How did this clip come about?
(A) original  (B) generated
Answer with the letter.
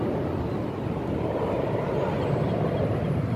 A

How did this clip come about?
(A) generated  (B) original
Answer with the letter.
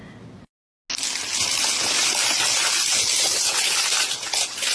B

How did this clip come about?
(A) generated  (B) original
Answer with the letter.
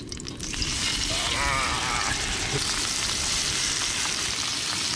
B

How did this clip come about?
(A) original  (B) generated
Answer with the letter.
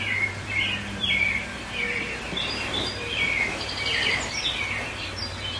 B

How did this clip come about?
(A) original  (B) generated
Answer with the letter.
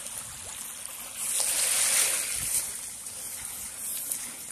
A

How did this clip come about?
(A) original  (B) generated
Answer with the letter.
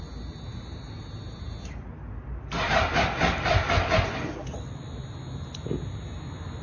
A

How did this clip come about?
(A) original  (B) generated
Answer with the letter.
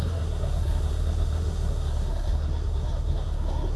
B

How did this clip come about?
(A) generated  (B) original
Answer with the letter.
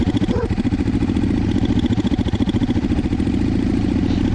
B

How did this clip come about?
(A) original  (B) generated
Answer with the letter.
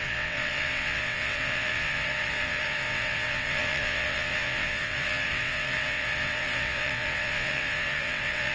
B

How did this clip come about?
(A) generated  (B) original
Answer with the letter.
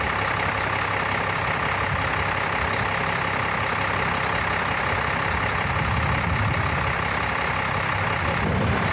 B